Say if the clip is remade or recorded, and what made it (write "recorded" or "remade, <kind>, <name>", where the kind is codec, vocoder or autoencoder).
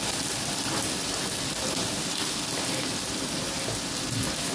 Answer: recorded